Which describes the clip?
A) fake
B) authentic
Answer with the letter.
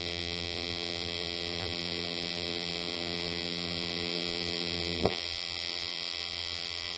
A